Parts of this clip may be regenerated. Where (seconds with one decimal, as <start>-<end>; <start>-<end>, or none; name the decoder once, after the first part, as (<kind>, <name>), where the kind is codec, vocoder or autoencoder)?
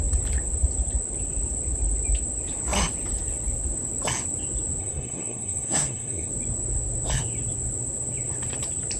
4.8-6.3 (codec, SNAC)